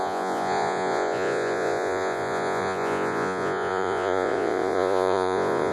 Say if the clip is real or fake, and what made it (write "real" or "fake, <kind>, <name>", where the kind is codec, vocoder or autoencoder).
fake, vocoder, Vocos